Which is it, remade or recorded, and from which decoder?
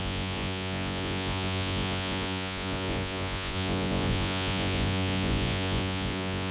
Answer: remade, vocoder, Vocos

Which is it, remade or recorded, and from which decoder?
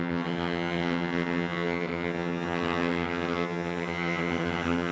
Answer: remade, vocoder, HiFi-GAN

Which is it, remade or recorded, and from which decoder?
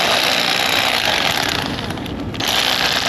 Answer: recorded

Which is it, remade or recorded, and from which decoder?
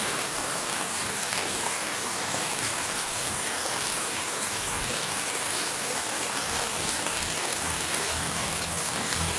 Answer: remade, codec, DAC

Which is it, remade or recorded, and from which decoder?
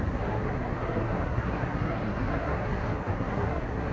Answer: remade, codec, SNAC